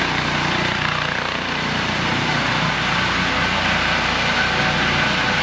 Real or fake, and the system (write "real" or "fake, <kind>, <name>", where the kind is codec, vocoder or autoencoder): real